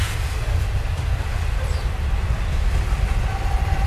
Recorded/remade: remade